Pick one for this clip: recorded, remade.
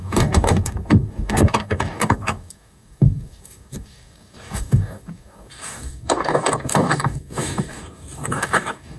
remade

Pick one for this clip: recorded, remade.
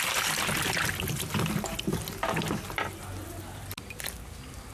recorded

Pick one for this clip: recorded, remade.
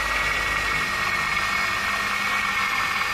recorded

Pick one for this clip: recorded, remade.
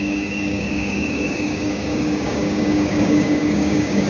remade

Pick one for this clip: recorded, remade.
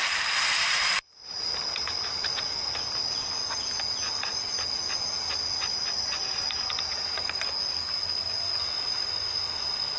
recorded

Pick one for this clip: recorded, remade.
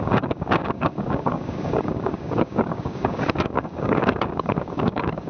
remade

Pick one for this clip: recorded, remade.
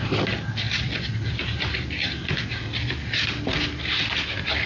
recorded